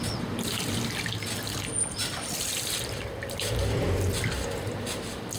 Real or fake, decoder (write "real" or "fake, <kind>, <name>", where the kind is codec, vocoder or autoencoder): real